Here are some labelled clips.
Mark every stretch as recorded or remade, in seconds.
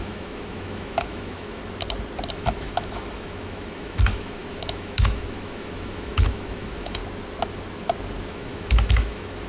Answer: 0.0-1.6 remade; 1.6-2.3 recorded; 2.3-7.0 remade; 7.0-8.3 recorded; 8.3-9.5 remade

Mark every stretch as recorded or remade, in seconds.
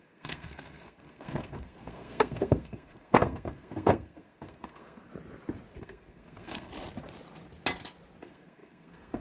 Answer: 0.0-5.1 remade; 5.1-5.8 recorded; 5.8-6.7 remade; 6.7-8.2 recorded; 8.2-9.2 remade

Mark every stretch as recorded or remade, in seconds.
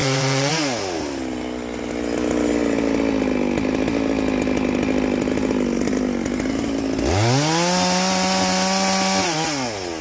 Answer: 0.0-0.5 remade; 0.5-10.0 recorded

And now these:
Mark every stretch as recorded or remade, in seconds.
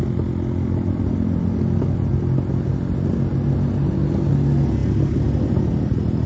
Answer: 0.0-6.3 recorded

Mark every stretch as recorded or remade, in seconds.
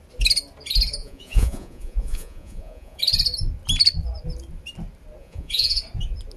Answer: 0.0-1.0 recorded; 1.0-3.0 remade; 3.0-5.2 recorded; 5.2-5.8 remade; 5.8-6.4 recorded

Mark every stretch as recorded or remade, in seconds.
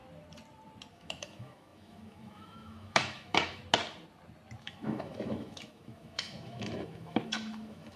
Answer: 0.0-0.9 recorded; 0.9-3.6 remade; 3.6-4.6 recorded; 4.6-8.0 remade